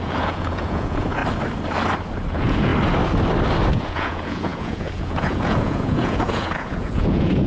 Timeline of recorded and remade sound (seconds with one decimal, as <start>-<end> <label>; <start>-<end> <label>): 0.0-1.2 remade; 1.2-2.3 recorded; 2.3-2.7 remade; 2.7-3.7 recorded; 3.7-7.5 remade